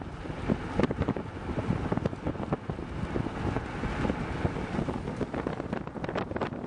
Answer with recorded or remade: recorded